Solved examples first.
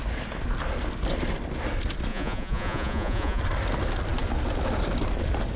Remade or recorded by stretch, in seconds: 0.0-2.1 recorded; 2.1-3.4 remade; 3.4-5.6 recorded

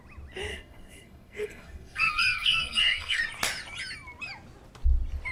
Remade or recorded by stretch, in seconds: 0.0-0.5 recorded; 0.5-3.2 remade; 3.2-5.3 recorded

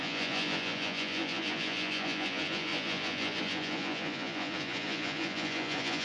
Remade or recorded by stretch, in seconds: 0.0-6.0 remade

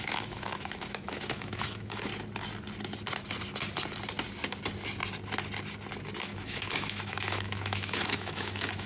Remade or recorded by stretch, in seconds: 0.0-2.1 remade; 2.1-6.2 recorded; 6.2-8.9 remade

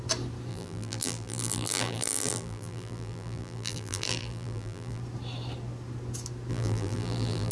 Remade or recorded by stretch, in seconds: 0.0-0.5 recorded; 0.5-5.0 remade; 5.0-6.5 recorded; 6.5-7.5 remade

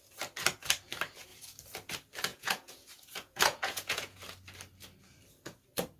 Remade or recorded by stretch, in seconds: 0.0-2.3 recorded; 2.3-4.2 remade; 4.2-6.0 recorded